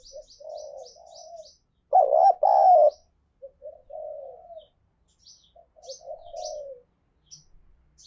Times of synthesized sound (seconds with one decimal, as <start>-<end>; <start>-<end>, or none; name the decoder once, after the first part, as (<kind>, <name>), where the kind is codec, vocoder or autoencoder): none